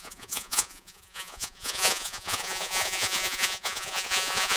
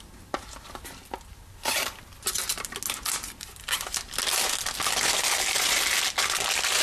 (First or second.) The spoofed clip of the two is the first